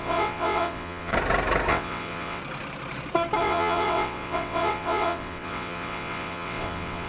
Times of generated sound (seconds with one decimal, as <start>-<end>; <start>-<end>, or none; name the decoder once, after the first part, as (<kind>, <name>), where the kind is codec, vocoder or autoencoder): 0.0-1.1 (vocoder, WaveNeXt); 1.7-2.4; 3.4-7.1